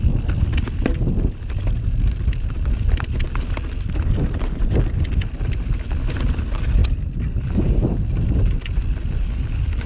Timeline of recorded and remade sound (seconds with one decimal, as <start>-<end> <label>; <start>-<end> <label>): 0.0-9.9 recorded